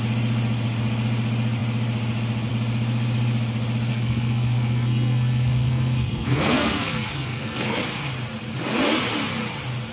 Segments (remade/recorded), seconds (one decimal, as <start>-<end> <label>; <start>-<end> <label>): 0.0-3.9 recorded; 3.9-7.8 remade; 7.8-9.9 recorded